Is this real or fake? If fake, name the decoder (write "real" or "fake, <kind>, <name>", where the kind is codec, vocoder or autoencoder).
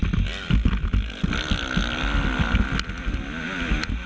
real